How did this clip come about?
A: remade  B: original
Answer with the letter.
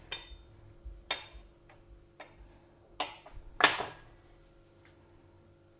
B